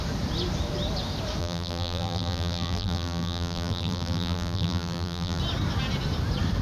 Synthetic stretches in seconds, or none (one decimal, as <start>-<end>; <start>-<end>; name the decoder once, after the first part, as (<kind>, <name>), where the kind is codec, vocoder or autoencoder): 1.4-5.4 (vocoder, BigVGAN v2)